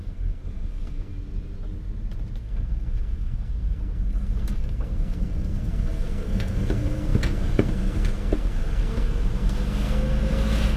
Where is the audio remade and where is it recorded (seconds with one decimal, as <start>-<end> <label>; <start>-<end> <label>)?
0.0-1.1 remade; 1.1-2.4 recorded; 2.4-10.8 remade